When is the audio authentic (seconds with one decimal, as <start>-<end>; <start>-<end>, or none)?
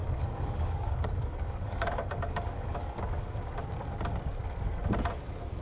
3.3-5.6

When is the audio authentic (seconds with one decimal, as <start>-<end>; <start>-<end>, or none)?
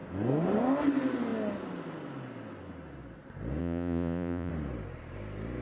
0.0-3.6; 4.5-5.6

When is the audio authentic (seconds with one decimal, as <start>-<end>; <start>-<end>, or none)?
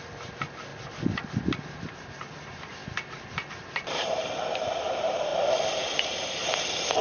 0.7-1.9; 2.8-3.5; 5.3-5.8